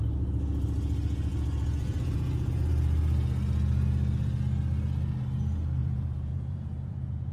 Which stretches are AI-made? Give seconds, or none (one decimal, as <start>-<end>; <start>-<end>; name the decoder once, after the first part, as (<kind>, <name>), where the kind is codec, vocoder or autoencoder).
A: 1.3-2.7 (vocoder, Vocos); 5.8-7.3